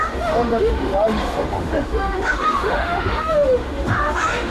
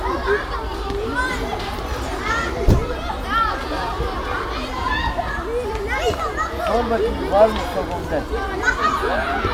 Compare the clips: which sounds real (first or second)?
second